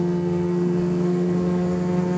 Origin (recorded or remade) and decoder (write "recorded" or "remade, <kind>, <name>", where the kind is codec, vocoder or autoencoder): remade, codec, SNAC